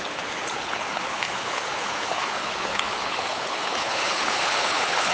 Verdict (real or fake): fake